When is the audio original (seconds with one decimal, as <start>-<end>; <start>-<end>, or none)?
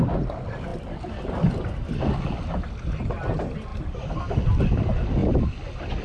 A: 0.0-6.0